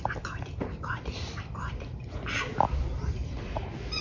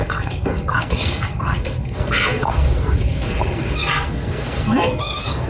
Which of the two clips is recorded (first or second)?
first